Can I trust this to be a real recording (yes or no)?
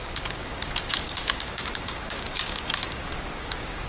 no